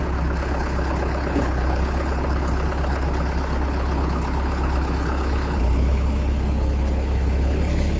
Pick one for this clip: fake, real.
fake